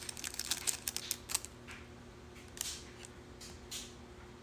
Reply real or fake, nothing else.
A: real